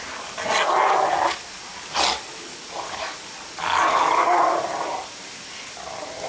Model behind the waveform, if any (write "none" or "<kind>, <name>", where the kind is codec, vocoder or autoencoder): none